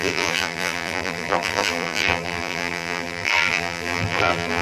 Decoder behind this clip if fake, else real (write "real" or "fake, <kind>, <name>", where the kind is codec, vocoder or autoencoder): fake, vocoder, BigVGAN v2